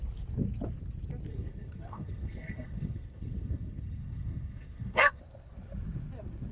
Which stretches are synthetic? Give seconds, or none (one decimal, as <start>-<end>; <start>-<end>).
1.3-5.2